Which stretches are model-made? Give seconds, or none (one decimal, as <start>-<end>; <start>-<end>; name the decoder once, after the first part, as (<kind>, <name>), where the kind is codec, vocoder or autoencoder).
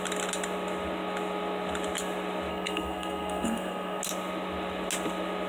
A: 2.5-4.0 (codec, SNAC)